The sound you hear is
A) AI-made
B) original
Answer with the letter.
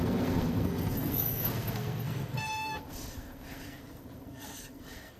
A